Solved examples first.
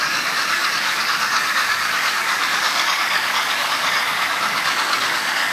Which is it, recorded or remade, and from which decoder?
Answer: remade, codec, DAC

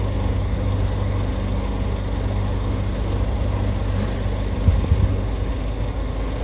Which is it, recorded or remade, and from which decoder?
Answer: recorded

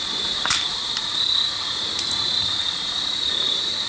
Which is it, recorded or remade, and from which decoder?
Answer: recorded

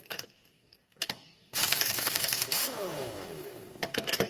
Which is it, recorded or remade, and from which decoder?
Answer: remade, codec, DAC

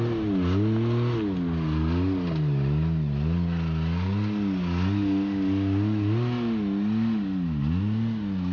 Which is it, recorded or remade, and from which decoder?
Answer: recorded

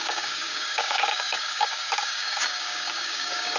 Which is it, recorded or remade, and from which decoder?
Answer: remade, codec, DAC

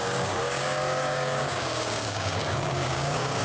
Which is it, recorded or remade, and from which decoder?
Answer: remade, codec, DAC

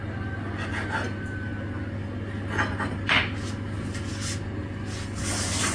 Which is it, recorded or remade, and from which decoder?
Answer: recorded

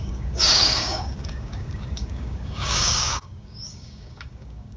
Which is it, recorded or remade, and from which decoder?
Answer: remade, codec, DAC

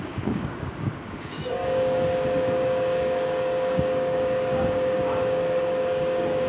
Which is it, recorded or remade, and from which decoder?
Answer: remade, codec, DAC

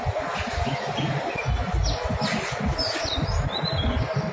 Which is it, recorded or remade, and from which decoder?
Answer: recorded